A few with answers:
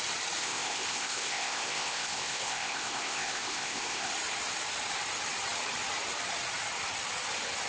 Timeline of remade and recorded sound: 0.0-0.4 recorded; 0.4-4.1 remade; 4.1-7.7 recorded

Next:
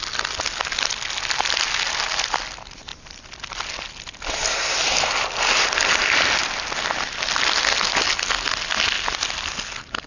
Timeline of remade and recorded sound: 0.0-10.1 recorded

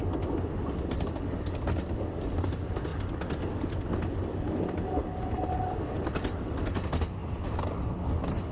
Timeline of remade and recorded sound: 0.0-8.5 recorded

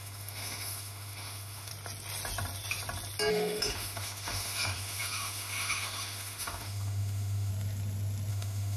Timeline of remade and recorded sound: 0.0-1.7 remade; 1.7-3.3 recorded; 3.3-7.5 remade; 7.5-8.3 recorded; 8.3-8.8 remade

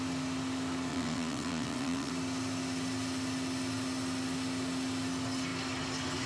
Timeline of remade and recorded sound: 0.0-0.9 recorded; 0.9-2.1 remade; 2.1-6.3 recorded

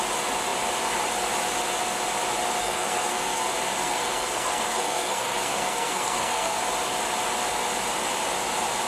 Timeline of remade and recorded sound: 0.0-2.6 recorded; 2.6-3.4 remade; 3.4-3.8 recorded; 3.8-6.6 remade; 6.6-8.9 recorded

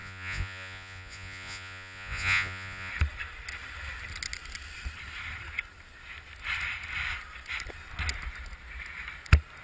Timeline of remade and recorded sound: 0.0-2.9 remade; 2.9-9.6 recorded